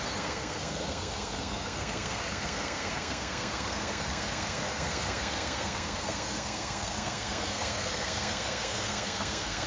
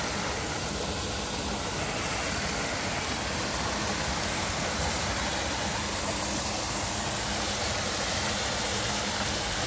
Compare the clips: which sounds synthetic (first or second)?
first